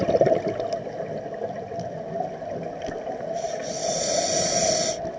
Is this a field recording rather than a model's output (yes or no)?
yes